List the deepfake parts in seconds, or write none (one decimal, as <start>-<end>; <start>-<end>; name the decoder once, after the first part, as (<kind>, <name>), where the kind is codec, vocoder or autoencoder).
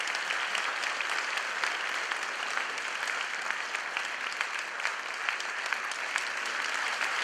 none